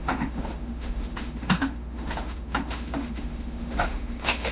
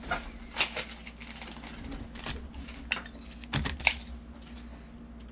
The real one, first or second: second